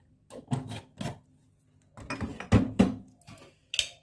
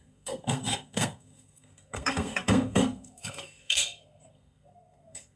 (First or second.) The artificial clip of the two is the second